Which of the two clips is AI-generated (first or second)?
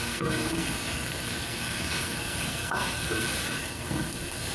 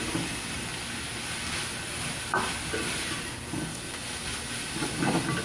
first